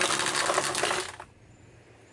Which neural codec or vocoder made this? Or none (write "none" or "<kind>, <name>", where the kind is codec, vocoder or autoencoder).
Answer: none